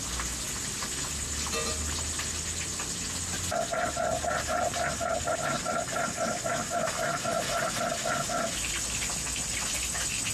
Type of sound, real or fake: real